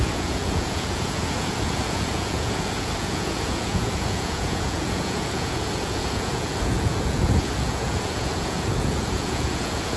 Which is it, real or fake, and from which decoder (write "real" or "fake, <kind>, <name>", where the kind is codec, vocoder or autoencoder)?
fake, vocoder, Vocos